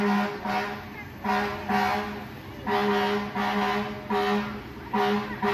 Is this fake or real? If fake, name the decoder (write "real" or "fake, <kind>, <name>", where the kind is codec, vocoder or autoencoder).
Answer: real